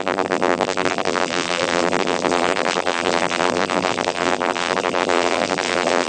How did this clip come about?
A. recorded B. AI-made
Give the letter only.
B